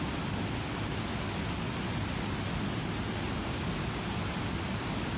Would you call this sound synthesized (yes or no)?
no